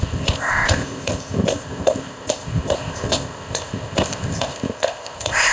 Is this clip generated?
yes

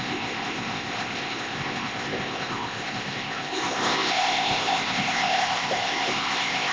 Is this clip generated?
yes